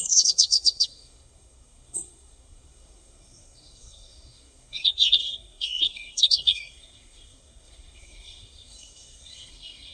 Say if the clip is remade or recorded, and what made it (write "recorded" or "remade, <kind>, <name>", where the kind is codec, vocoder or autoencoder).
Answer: remade, codec, SNAC